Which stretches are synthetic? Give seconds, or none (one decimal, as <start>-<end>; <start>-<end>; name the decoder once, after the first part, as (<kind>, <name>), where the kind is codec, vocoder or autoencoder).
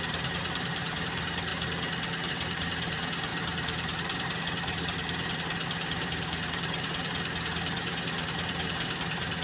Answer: 0.0-1.5 (vocoder, BigVGAN v2); 2.3-9.4